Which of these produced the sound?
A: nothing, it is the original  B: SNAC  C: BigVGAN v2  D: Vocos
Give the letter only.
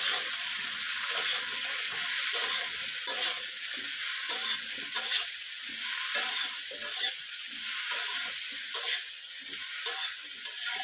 A